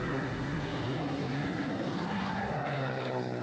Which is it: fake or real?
fake